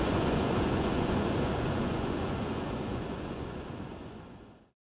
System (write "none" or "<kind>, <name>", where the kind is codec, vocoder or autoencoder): vocoder, Vocos